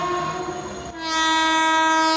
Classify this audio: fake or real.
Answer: real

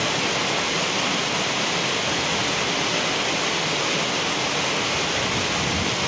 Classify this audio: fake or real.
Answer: real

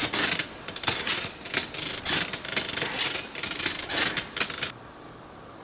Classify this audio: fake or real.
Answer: real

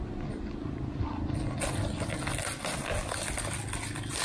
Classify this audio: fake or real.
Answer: real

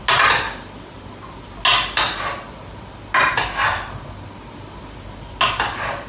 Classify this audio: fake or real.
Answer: real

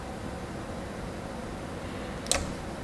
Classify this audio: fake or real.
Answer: real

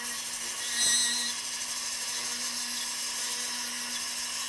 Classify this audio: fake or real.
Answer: real